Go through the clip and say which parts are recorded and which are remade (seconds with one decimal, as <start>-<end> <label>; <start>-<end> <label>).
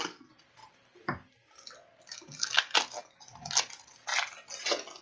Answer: 0.0-5.0 recorded